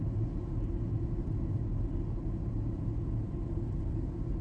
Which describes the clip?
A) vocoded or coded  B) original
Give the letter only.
B